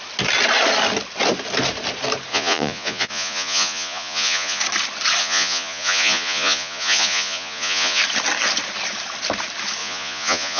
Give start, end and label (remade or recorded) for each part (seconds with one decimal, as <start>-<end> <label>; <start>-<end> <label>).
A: 0.0-2.3 recorded; 2.3-4.6 remade; 4.6-5.2 recorded; 5.2-8.0 remade; 8.0-9.8 recorded; 9.8-10.6 remade